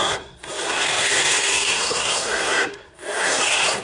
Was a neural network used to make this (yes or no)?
yes